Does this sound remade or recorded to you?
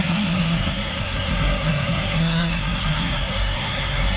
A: remade